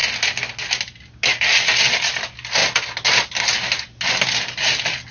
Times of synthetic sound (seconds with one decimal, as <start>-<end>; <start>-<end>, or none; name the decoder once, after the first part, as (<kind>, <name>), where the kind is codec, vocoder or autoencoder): none